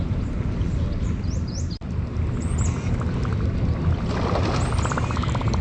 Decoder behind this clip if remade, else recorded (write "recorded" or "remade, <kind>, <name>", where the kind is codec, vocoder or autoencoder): recorded